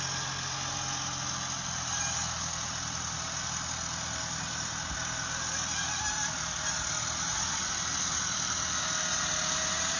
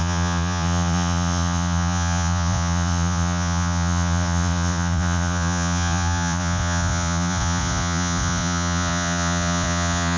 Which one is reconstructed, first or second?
second